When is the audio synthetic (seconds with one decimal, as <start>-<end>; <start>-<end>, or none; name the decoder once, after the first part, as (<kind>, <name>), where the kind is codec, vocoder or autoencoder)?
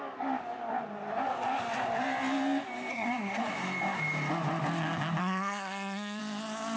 2.9-3.4 (codec, SNAC); 5.2-6.2